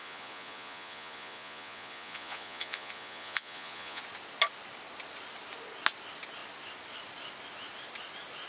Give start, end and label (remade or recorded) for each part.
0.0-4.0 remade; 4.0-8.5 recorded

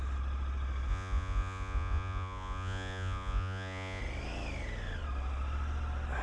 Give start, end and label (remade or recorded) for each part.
0.0-0.9 recorded; 0.9-4.0 remade; 4.0-6.2 recorded

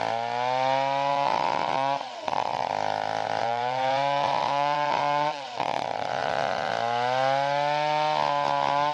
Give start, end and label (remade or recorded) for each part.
0.0-1.1 recorded; 1.1-2.7 remade; 2.7-3.4 recorded; 3.4-6.7 remade; 6.7-8.9 recorded

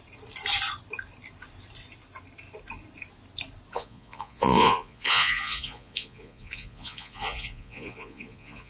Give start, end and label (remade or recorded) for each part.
0.0-3.7 recorded; 3.7-8.7 remade